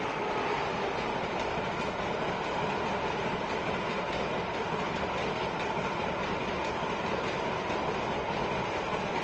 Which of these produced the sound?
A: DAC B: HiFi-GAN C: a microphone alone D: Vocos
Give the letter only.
C